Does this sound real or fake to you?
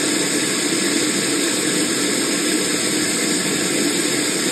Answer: real